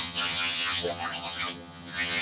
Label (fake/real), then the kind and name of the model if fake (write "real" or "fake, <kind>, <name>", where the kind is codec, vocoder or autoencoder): fake, vocoder, HiFi-GAN